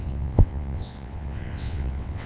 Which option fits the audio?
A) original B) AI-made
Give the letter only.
B